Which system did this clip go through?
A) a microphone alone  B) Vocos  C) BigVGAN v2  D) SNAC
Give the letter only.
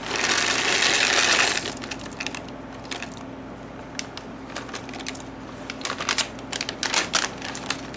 A